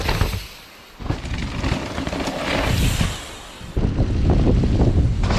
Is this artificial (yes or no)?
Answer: no